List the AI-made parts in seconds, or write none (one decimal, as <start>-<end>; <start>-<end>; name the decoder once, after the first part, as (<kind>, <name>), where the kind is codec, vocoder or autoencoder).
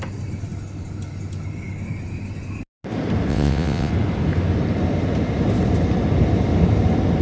3.3-3.9 (vocoder, WaveNeXt)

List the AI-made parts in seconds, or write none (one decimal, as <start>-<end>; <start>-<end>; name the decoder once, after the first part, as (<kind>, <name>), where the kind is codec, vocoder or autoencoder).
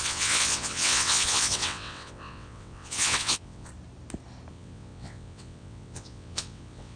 0.0-3.7 (vocoder, WaveNeXt); 4.5-7.0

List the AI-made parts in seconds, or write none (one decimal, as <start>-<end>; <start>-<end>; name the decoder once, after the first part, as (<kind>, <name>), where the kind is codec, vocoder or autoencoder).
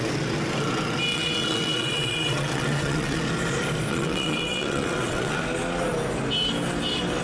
1.1-3.2 (vocoder, WaveNeXt); 3.9-5.4